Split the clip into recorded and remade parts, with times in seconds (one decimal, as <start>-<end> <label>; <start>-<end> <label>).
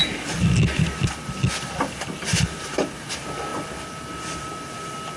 0.0-5.2 recorded